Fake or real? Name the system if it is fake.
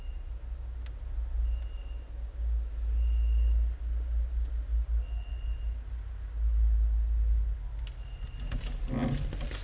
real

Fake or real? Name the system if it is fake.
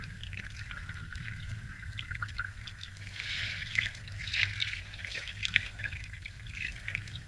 fake, codec, SNAC